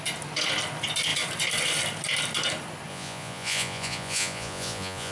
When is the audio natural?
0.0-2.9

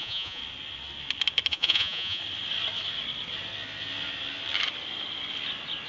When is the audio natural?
0.4-1.5; 2.2-5.9

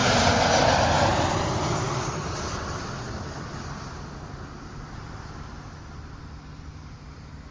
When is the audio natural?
0.0-7.5